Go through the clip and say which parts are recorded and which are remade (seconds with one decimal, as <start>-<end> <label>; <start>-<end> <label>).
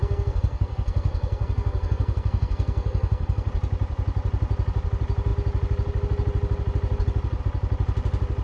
0.0-3.5 remade; 3.5-8.4 recorded